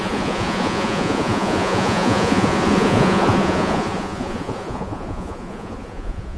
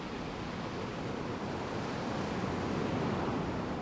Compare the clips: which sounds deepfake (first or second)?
first